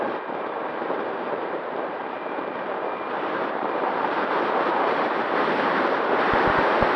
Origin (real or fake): fake